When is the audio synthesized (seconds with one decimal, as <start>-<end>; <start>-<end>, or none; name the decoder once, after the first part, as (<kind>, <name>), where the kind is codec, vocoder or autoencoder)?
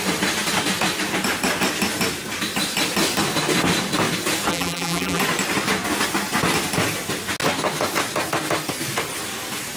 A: 4.5-5.2 (vocoder, BigVGAN v2)